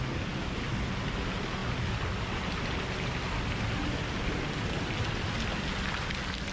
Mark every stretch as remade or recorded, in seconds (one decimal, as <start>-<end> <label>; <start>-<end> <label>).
0.0-6.5 recorded